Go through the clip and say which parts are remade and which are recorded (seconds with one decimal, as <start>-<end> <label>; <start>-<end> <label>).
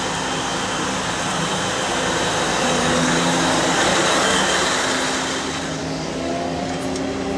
0.0-2.5 recorded; 2.5-4.5 remade; 4.5-5.8 recorded; 5.8-6.6 remade; 6.6-7.4 recorded